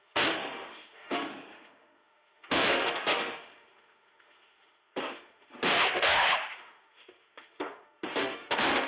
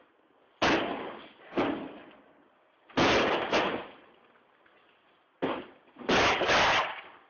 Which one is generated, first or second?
first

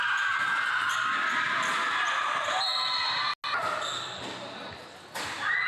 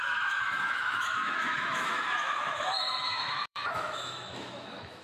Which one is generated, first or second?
second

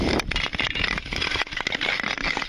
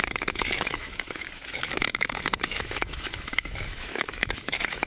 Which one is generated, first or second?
second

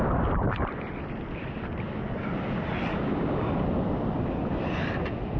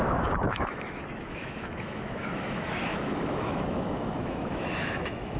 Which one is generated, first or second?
second